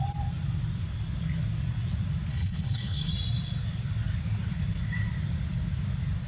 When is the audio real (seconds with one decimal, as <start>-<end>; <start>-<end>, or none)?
0.0-2.3; 3.1-6.3

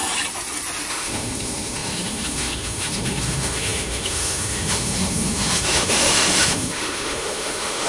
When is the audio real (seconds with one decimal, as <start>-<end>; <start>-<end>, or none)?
0.0-0.9

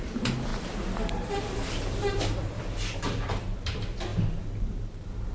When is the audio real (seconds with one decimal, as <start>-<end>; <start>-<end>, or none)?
4.1-4.7